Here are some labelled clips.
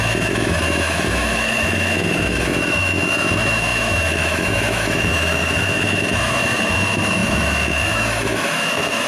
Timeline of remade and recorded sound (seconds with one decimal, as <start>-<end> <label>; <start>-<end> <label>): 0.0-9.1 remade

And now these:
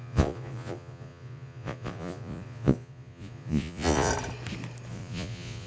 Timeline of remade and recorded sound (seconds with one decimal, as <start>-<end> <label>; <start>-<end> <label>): 0.0-4.1 remade; 4.1-4.9 recorded; 4.9-5.7 remade

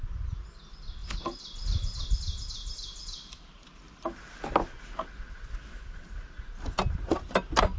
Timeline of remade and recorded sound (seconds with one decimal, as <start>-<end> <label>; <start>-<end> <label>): 0.0-7.8 recorded

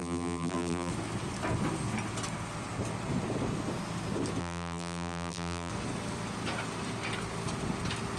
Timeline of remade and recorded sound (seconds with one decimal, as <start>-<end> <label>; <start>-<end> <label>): 0.0-0.9 remade; 0.9-4.4 recorded; 4.4-5.7 remade; 5.7-8.2 recorded

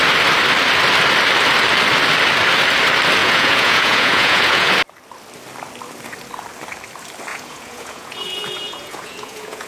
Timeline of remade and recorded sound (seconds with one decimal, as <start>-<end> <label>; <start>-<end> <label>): 0.0-3.2 recorded; 3.2-4.7 remade; 4.7-7.3 recorded; 7.3-9.7 remade